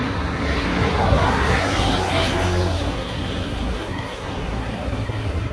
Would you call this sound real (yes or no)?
no